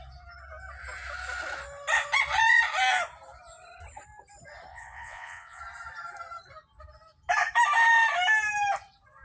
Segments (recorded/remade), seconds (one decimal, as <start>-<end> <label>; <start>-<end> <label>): 0.0-4.7 recorded; 4.7-5.6 remade; 5.6-9.2 recorded

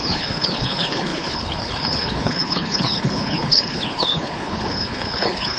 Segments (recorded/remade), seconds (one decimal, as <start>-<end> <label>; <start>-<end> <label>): 0.0-5.6 remade

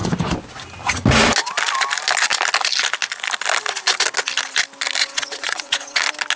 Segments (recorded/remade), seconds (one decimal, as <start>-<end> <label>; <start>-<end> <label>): 0.0-5.0 recorded; 5.0-6.0 remade; 6.0-6.4 recorded

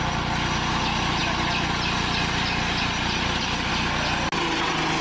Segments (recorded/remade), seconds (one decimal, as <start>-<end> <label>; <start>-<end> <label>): 0.0-5.0 recorded